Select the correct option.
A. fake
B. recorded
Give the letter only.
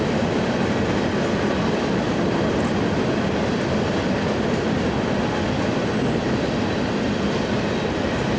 B